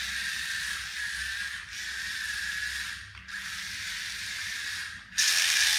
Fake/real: real